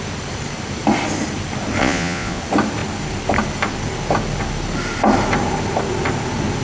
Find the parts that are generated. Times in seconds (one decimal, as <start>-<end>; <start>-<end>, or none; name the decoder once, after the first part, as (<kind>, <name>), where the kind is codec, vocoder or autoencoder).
1.8-2.4 (vocoder, Vocos)